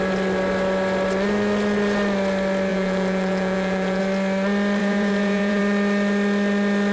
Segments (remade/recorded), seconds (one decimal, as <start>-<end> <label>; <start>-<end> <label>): 0.0-2.7 recorded; 2.7-4.0 remade; 4.0-4.8 recorded; 4.8-5.6 remade; 5.6-6.9 recorded